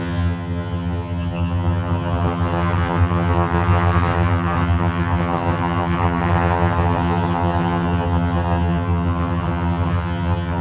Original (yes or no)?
no